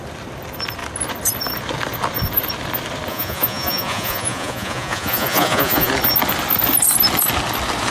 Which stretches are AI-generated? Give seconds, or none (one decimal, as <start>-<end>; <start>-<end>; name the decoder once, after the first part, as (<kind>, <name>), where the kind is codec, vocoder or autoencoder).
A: 3.1-5.9 (vocoder, Vocos)